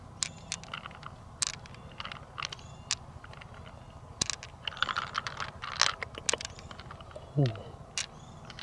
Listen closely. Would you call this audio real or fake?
real